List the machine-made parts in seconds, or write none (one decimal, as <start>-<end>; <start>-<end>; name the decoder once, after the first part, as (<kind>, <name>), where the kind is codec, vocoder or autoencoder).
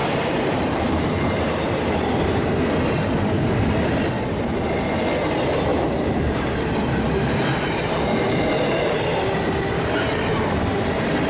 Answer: 0.0-2.5 (vocoder, BigVGAN v2); 5.7-6.6